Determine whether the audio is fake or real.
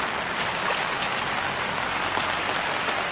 real